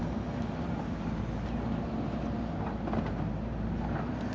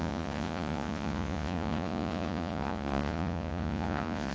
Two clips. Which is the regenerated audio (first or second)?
second